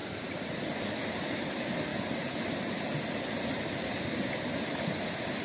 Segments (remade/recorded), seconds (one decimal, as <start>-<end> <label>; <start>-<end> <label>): 0.0-5.4 recorded